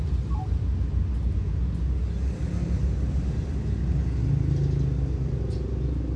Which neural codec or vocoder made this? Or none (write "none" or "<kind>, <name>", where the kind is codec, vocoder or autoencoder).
none